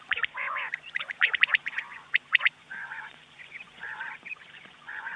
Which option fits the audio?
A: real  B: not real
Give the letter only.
B